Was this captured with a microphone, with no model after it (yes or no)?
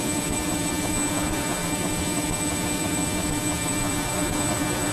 no